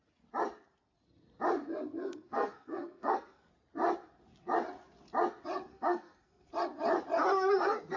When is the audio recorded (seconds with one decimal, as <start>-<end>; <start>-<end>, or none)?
0.0-2.0; 3.5-5.7; 6.5-8.0